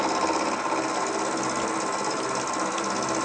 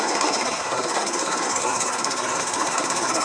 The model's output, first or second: second